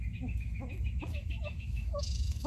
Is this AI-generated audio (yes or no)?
yes